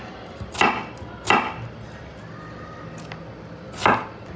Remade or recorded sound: recorded